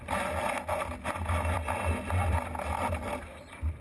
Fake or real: real